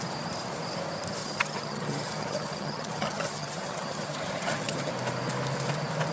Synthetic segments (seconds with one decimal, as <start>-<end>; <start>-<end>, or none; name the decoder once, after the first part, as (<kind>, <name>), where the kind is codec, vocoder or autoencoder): 1.2-4.9 (vocoder, HiFi-GAN)